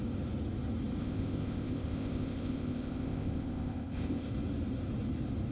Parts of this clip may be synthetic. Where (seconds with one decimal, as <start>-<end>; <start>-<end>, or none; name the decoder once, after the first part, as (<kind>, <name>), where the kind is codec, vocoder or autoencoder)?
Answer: 1.0-4.3 (codec, ZipCodec)